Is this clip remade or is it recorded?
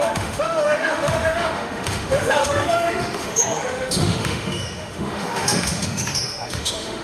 remade